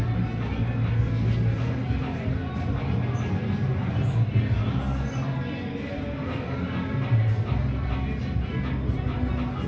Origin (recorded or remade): recorded